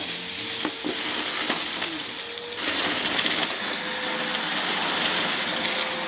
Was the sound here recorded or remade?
recorded